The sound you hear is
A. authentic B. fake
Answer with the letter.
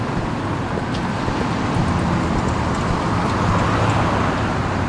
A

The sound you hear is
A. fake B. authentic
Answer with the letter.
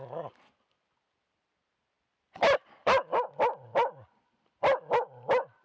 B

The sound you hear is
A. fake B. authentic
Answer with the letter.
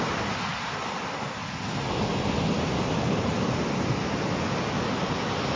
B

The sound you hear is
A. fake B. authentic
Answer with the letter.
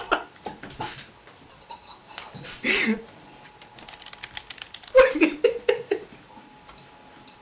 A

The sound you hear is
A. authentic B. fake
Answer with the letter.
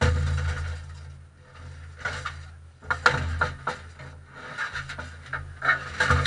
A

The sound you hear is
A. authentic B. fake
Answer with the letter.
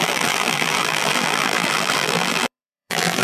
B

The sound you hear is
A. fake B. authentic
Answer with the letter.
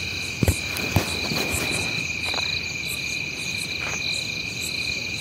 A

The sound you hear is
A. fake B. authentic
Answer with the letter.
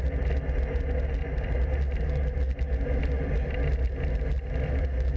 B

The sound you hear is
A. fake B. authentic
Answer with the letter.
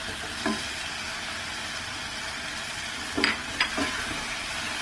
B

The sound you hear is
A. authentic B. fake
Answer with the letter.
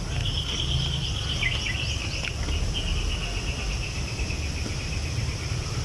A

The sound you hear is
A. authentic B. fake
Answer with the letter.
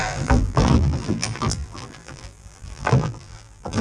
B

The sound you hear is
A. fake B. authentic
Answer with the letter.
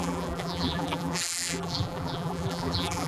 A